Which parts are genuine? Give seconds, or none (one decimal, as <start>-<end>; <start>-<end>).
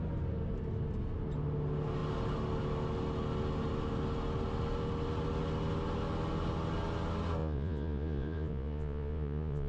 0.0-7.4